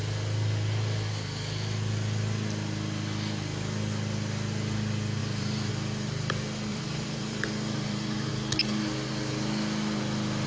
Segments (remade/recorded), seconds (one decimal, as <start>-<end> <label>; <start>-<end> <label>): 0.0-5.2 recorded; 5.2-5.7 remade; 5.7-6.7 recorded; 6.7-8.3 remade; 8.3-10.5 recorded